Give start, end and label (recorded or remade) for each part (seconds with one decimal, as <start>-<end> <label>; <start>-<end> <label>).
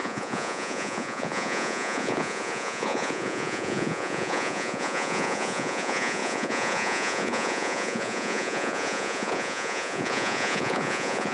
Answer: 0.0-11.3 remade